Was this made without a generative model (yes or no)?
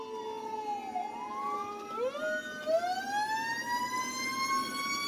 yes